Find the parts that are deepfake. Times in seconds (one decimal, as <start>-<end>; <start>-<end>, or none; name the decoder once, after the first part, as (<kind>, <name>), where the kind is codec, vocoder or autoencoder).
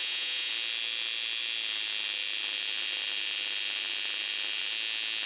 0.0-0.5 (vocoder, Vocos)